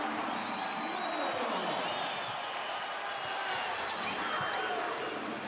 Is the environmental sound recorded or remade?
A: recorded